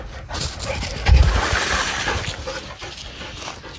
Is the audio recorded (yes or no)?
yes